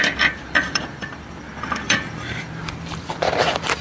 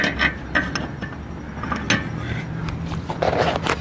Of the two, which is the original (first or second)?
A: second